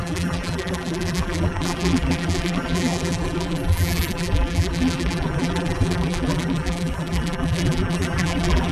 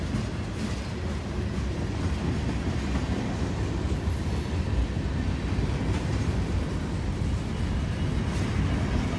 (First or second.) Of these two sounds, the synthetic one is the first